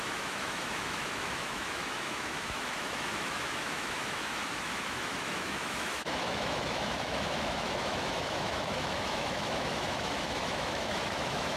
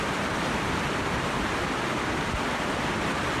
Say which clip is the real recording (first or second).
second